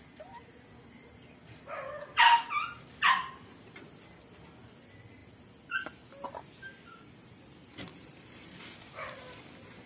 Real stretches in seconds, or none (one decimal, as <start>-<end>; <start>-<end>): 0.0-7.9; 9.1-9.9